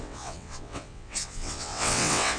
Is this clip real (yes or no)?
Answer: no